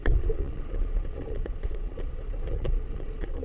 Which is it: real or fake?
fake